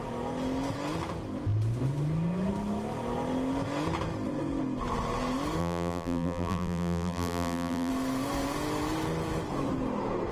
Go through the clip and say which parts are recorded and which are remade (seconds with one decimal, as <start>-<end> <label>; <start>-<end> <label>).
0.0-5.6 recorded; 5.6-7.9 remade; 7.9-10.3 recorded

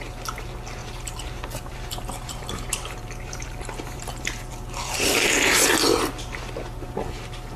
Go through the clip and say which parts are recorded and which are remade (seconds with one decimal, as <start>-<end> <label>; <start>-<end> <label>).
0.0-0.8 recorded; 0.8-5.3 remade; 5.3-7.6 recorded

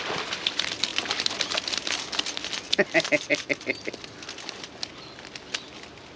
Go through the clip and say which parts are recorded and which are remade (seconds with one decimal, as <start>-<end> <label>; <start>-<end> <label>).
0.0-0.9 recorded; 0.9-1.8 remade; 1.8-3.3 recorded; 3.3-4.9 remade; 4.9-6.2 recorded